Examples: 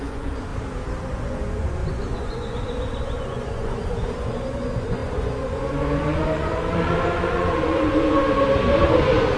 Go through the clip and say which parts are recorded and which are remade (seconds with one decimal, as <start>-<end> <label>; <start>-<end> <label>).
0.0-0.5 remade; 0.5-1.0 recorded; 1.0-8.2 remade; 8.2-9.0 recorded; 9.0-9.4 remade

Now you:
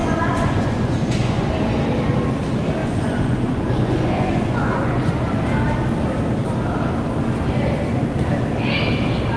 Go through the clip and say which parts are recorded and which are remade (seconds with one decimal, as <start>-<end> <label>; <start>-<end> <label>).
0.0-1.5 remade; 1.5-2.8 recorded; 2.8-5.1 remade; 5.1-9.4 recorded

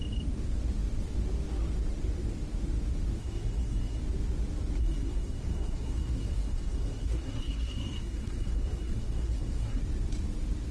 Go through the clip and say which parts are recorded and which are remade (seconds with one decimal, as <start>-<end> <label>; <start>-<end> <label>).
0.0-3.2 recorded; 3.2-4.0 remade; 4.0-4.8 recorded; 4.8-9.8 remade; 9.8-10.7 recorded